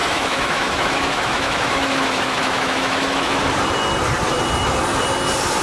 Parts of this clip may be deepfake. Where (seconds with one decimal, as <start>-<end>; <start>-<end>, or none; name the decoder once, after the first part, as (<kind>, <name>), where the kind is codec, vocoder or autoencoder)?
0.0-3.4 (autoencoder, DAC-VAE)